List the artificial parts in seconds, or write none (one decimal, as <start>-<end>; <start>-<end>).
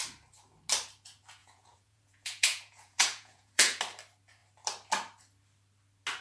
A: 1.4-3.8